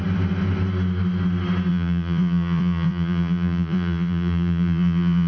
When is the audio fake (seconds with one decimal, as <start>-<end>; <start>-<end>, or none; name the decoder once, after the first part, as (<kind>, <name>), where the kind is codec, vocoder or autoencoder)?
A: 1.7-5.3 (vocoder, Vocos)